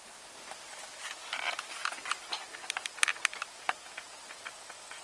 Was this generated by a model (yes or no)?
no